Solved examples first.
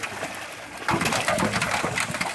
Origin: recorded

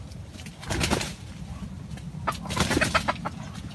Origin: recorded